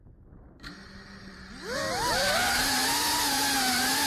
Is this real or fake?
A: real